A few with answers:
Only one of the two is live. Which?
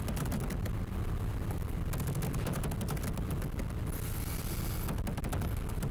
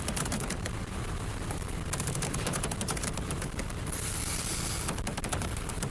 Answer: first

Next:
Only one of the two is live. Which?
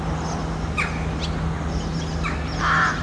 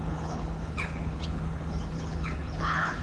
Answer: first